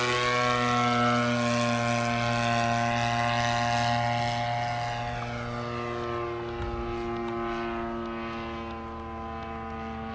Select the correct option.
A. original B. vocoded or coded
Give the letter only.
A